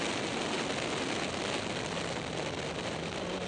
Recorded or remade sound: recorded